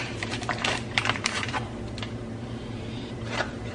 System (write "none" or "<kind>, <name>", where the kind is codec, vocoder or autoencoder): vocoder, BigVGAN v2